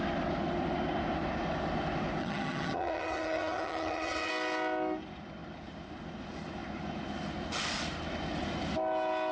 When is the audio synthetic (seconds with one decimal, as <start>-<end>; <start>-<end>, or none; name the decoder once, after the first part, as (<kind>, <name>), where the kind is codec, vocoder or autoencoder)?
2.2-4.3 (vocoder, HiFi-GAN)